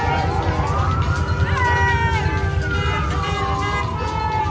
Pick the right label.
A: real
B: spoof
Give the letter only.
A